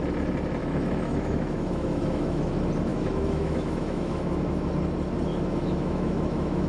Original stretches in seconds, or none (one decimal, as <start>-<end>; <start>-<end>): 0.0-0.6; 2.5-2.9; 4.7-5.3